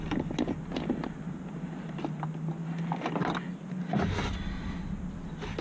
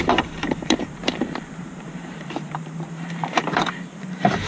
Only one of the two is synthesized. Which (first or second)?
second